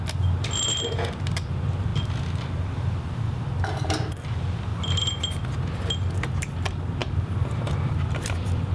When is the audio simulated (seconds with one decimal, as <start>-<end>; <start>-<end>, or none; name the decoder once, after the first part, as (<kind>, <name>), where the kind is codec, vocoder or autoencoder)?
1.9-4.3 (vocoder, BigVGAN v2); 4.7-5.2; 7.0-8.7